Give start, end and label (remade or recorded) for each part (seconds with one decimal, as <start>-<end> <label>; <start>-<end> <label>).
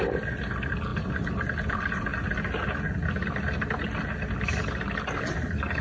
0.0-5.8 recorded